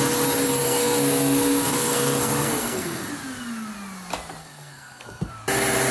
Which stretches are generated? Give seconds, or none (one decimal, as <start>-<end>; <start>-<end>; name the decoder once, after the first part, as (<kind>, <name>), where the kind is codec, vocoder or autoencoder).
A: 0.6-3.1 (codec, SNAC); 4.4-5.3